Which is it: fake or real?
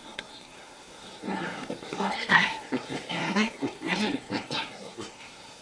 fake